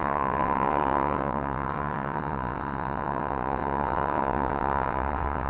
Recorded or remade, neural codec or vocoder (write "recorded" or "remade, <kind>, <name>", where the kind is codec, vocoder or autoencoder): remade, vocoder, WaveNeXt